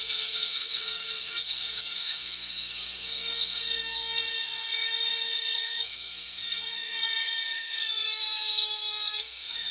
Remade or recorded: remade